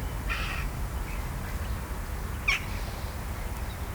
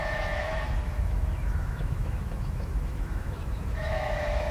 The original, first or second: first